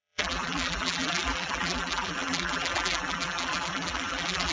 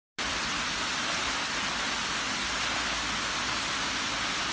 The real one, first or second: second